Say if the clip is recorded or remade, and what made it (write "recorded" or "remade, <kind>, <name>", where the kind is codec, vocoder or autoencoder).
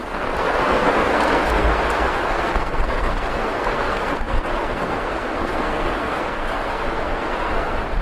remade, codec, SNAC